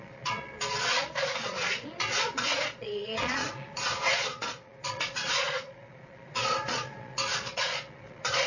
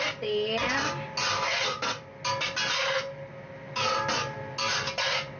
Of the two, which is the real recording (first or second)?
second